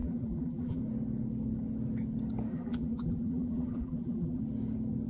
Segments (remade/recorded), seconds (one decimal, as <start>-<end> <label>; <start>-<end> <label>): 0.0-0.8 remade; 0.8-2.5 recorded; 2.5-4.4 remade; 4.4-5.1 recorded